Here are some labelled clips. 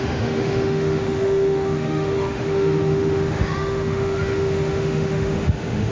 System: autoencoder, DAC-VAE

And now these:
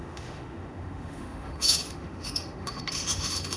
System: autoencoder, DAC-VAE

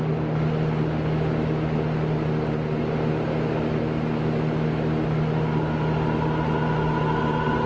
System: none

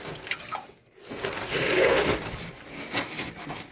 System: none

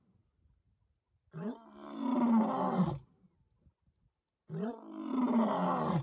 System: none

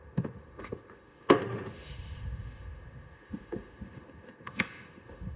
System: autoencoder, DAC-VAE